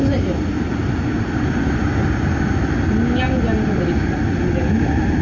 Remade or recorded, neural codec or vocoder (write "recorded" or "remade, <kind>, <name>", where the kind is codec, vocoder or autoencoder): recorded